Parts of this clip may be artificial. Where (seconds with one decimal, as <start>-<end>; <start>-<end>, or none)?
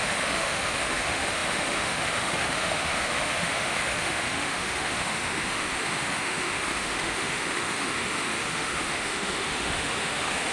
0.0-10.5